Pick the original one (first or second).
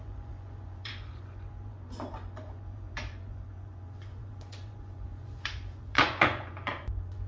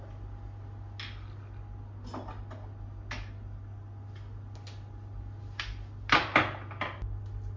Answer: second